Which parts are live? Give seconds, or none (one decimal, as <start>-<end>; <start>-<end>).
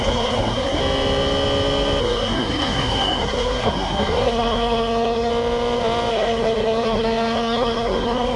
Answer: 0.8-2.0; 5.3-6.1